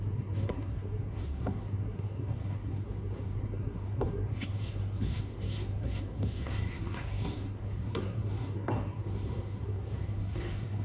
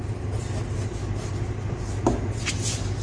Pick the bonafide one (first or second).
second